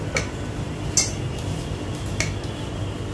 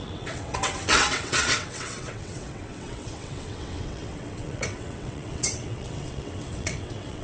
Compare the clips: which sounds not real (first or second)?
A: second